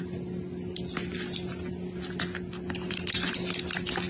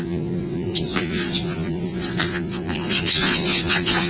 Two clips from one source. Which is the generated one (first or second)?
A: second